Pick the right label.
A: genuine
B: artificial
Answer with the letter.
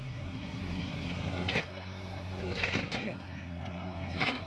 B